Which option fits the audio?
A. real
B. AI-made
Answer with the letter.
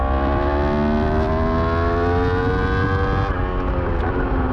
A